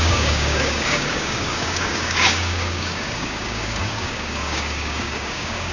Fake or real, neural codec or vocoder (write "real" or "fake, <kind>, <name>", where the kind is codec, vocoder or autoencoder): fake, codec, DAC